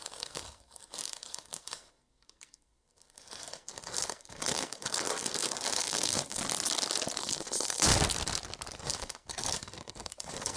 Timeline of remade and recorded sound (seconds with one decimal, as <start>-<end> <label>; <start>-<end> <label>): 0.0-6.4 remade; 6.4-7.2 recorded; 7.2-7.9 remade; 7.9-8.8 recorded; 8.8-10.6 remade